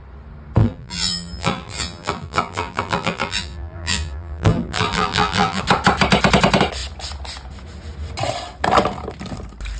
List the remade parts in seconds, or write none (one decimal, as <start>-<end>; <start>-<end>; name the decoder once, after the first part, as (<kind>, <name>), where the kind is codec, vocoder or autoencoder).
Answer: 0.6-5.6 (vocoder, BigVGAN v2)